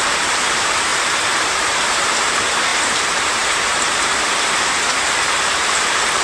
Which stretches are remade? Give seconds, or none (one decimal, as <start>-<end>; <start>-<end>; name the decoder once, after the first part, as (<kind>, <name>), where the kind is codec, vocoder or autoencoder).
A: 0.0-6.2 (vocoder, BigVGAN v2)